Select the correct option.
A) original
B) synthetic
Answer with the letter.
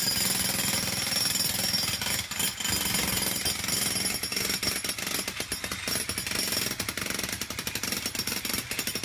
A